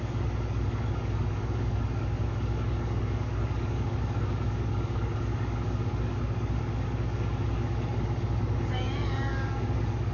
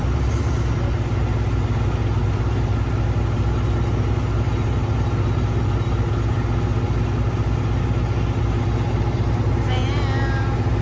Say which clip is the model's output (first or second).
first